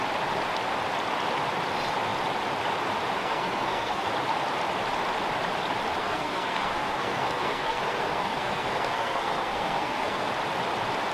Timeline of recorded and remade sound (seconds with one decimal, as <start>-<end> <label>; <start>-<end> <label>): 0.0-3.2 recorded; 3.2-4.1 remade; 4.1-6.0 recorded; 6.0-10.3 remade; 10.3-11.1 recorded